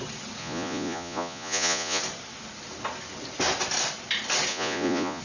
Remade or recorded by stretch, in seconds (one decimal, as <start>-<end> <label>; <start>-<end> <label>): 0.0-0.4 recorded; 0.4-2.0 remade; 2.0-4.5 recorded; 4.5-5.2 remade